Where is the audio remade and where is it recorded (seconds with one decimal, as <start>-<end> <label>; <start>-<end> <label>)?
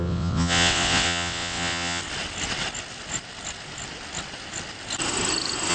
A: 0.0-2.0 remade; 2.0-5.7 recorded